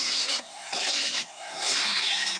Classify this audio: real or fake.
fake